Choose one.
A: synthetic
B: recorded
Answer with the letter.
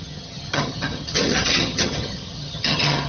A